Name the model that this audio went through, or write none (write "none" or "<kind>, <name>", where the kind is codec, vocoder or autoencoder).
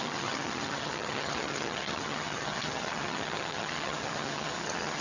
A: vocoder, HiFi-GAN